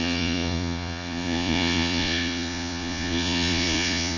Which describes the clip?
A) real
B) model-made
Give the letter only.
B